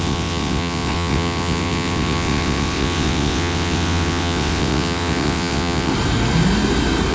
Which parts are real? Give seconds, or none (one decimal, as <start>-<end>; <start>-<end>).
5.9-7.1